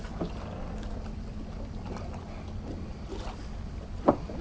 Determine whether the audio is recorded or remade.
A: recorded